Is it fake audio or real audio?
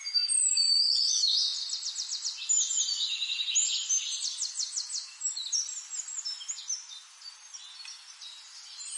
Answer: real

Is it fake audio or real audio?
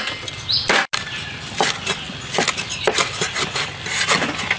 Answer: real